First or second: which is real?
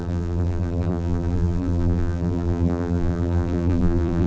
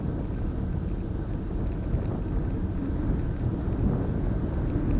second